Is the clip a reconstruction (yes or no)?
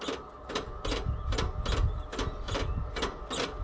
no